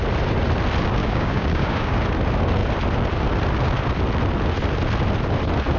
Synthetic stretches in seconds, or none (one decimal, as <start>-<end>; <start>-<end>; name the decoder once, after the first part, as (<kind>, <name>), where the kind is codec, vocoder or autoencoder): 1.0-2.0 (codec, DAC)